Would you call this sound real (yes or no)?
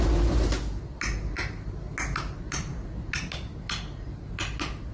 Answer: yes